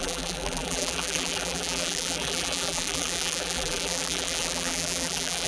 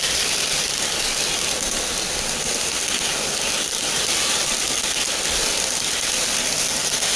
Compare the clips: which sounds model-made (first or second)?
first